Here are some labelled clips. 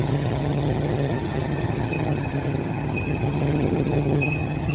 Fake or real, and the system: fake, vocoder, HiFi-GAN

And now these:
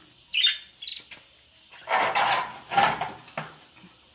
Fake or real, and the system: real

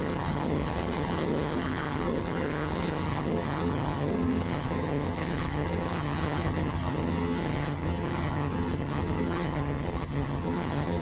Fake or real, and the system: fake, vocoder, HiFi-GAN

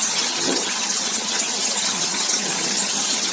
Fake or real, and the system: fake, vocoder, HiFi-GAN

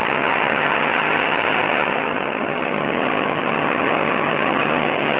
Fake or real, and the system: fake, vocoder, HiFi-GAN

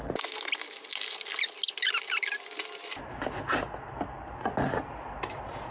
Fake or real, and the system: real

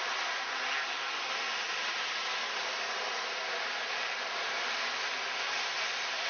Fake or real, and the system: real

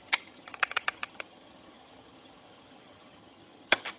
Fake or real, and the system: fake, vocoder, HiFi-GAN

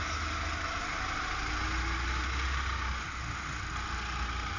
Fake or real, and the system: real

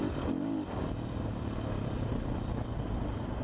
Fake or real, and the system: real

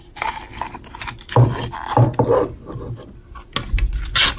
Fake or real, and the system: real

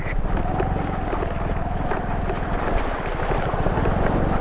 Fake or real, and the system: real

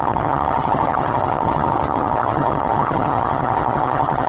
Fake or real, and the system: fake, vocoder, HiFi-GAN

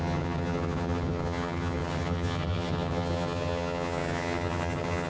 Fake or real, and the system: fake, vocoder, HiFi-GAN